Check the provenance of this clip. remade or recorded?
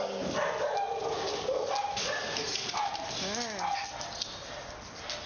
recorded